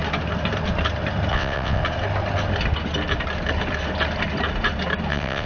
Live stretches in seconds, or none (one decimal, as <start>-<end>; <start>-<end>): 0.0-1.3; 1.8-5.1